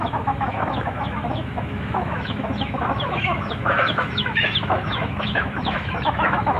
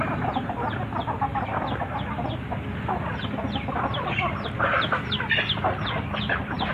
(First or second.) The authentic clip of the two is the second